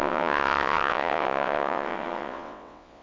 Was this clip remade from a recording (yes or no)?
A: yes